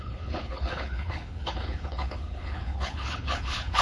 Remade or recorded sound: remade